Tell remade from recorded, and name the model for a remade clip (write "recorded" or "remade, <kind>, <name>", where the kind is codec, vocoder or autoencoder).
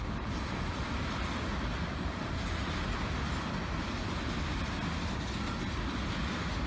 recorded